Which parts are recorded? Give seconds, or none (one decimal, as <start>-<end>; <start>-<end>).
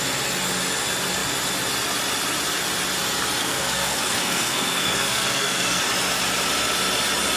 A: 0.0-3.4; 5.8-7.4